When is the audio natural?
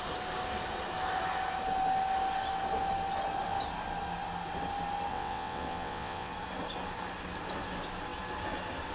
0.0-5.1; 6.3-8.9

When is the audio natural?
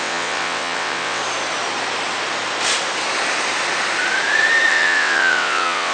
1.2-4.7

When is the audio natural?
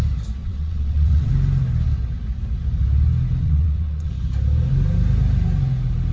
0.0-0.4; 1.3-3.4; 4.1-6.1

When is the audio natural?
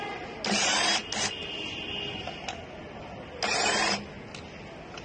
0.0-5.0